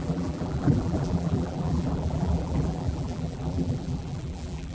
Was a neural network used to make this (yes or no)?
yes